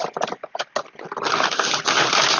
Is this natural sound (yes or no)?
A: yes